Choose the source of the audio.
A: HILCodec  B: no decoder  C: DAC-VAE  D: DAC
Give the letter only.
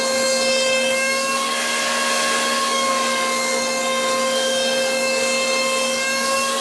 D